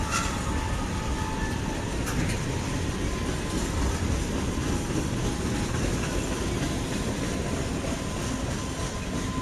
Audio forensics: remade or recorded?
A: recorded